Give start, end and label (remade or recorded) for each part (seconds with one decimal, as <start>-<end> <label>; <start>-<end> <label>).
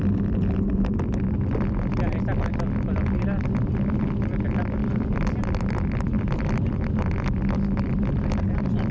0.0-4.8 recorded; 4.8-6.7 remade; 6.7-8.9 recorded